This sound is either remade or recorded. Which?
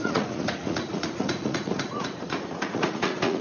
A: remade